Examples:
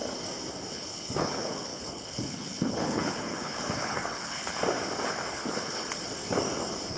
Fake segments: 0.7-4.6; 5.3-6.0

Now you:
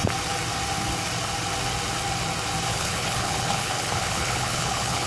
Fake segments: 2.7-5.1

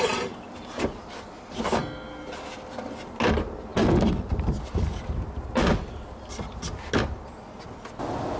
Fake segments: none

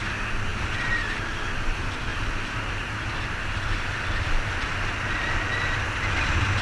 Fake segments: none

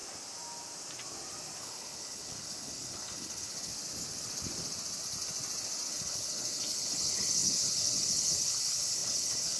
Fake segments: 1.6-3.7; 5.9-9.6

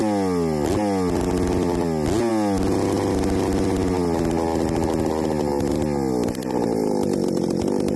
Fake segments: none

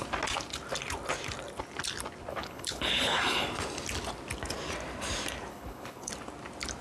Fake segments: 2.3-3.2; 5.5-6.1